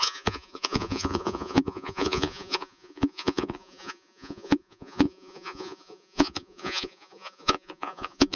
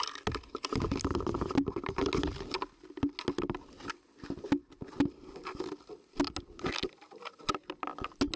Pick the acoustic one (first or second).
second